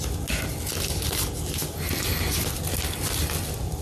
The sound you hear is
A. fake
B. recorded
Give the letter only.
B